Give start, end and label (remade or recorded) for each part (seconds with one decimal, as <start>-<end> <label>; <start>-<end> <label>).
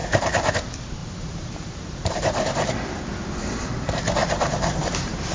0.0-0.5 remade; 0.5-1.0 recorded; 1.0-3.0 remade; 3.0-4.2 recorded; 4.2-5.3 remade